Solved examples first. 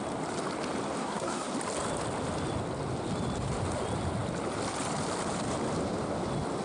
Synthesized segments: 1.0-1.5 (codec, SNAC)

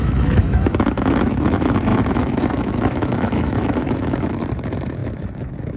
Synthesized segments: 0.0-5.8 (autoencoder, DAC-VAE)

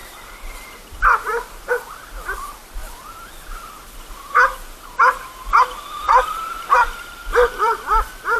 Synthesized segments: 0.0-2.8 (vocoder, BigVGAN v2); 5.6-8.4

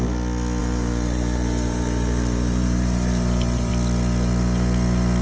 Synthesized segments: 0.6-3.7 (vocoder, BigVGAN v2)

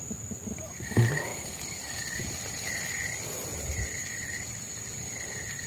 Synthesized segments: none

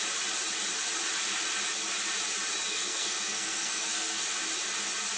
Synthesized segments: 2.7-4.2 (codec, SNAC)

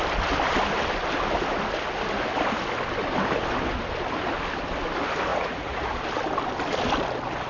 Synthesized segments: 5.3-5.9 (vocoder, Vocos)

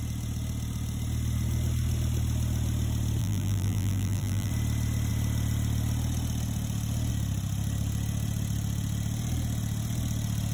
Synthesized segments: 3.2-4.5 (vocoder, BigVGAN v2)